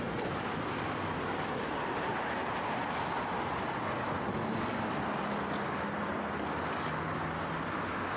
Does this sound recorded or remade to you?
recorded